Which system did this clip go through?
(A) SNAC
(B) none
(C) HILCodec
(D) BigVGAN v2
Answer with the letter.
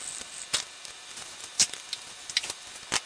B